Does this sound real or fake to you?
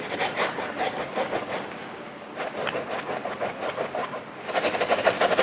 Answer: fake